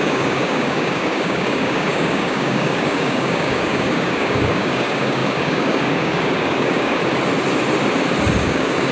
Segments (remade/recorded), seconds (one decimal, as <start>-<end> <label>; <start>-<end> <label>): 0.0-7.0 remade; 7.0-8.4 recorded; 8.4-8.9 remade